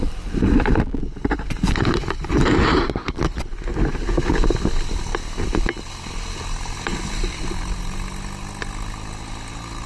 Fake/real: real